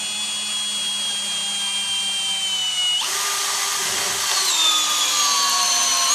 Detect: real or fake real